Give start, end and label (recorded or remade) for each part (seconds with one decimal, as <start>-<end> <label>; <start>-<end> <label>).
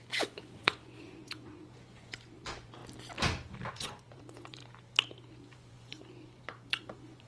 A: 0.0-2.8 remade; 2.8-3.7 recorded; 3.7-4.6 remade; 4.6-5.3 recorded; 5.3-7.3 remade